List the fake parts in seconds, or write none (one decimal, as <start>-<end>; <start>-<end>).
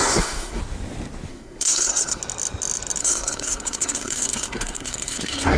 0.0-0.6; 1.3-2.2; 3.0-5.6